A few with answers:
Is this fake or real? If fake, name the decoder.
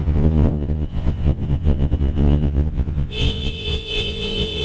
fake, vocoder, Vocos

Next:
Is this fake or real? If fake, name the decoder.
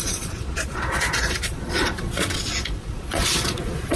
fake, vocoder, Vocos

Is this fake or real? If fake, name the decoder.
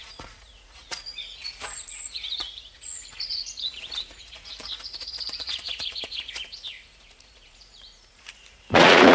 fake, vocoder, Vocos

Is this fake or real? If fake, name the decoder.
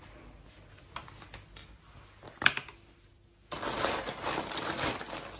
real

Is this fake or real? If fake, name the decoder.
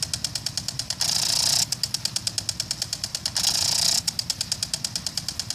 real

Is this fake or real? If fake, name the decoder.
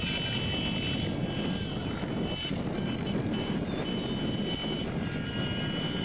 real